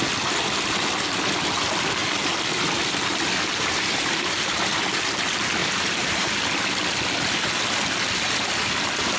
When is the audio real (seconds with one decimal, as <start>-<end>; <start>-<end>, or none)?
0.0-3.5; 4.5-5.6; 6.3-9.2